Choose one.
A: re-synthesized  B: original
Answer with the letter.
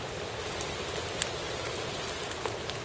B